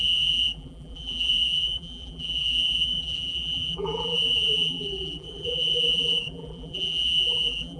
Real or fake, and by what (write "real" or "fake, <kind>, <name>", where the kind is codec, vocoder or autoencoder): fake, vocoder, BigVGAN v2